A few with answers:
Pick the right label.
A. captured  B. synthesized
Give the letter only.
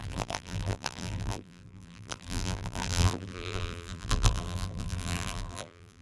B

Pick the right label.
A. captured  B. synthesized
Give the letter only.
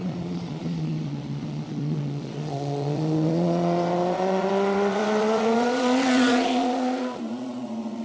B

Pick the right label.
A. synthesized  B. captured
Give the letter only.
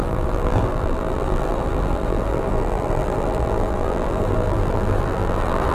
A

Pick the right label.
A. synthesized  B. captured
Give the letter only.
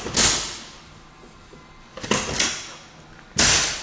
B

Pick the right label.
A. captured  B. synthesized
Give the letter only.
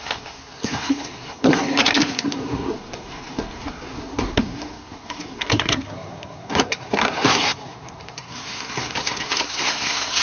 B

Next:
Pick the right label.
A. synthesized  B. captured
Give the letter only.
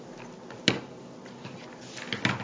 B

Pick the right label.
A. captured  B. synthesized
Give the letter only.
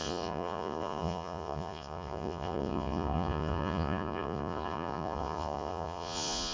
B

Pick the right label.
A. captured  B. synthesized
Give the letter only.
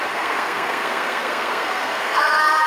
B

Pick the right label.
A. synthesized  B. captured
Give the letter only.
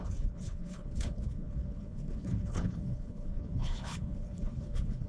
A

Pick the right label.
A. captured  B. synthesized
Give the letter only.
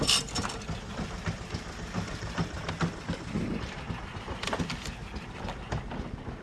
A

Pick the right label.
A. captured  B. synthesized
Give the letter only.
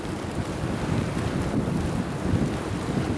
A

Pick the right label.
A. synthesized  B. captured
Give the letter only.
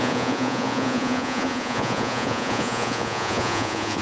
A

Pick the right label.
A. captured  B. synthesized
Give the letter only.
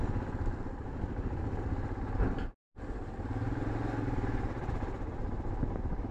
A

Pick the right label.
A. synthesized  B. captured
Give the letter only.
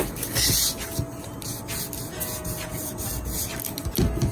B